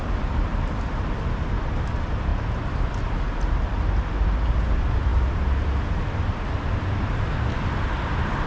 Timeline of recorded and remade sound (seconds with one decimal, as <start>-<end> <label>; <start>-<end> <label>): 0.0-8.5 recorded